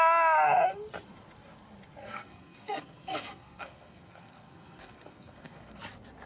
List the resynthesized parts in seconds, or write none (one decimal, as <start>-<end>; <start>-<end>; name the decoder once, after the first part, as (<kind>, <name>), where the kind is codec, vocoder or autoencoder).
2.0-5.8 (codec, SNAC)